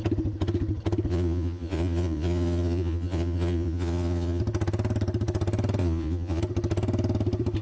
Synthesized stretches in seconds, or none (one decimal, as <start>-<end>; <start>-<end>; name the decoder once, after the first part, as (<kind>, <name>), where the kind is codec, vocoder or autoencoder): 1.1-4.4 (vocoder, Vocos); 5.8-6.4